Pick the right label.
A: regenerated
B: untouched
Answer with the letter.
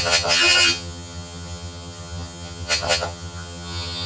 A